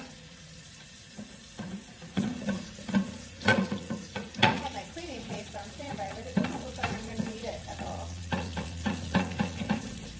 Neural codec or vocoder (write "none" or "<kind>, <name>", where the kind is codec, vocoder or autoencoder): vocoder, Vocos